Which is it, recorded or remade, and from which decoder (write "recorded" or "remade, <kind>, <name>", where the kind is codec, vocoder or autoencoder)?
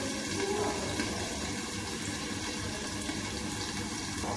recorded